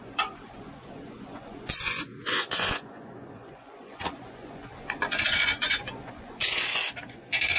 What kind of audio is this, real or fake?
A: fake